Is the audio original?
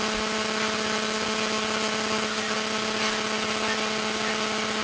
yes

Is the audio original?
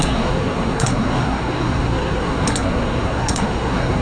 no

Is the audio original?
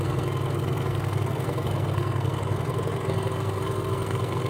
no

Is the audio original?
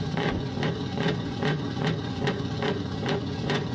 no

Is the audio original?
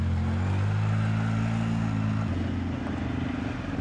yes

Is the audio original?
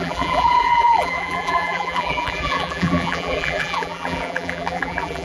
no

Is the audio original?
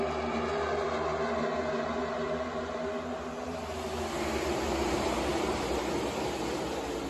yes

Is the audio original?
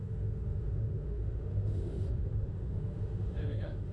no